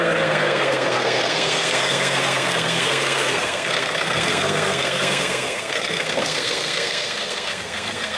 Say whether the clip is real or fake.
fake